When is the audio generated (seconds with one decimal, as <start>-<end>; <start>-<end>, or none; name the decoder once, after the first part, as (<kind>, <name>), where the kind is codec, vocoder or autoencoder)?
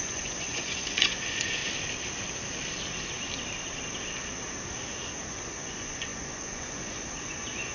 0.0-1.6 (vocoder, Vocos); 5.3-7.7